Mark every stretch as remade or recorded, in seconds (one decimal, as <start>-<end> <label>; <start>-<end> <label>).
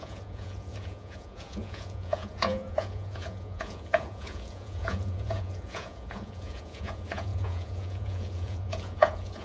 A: 0.0-9.4 remade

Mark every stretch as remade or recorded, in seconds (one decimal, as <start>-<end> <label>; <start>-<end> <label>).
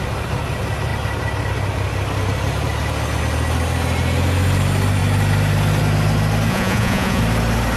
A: 0.0-6.5 recorded; 6.5-7.2 remade; 7.2-7.8 recorded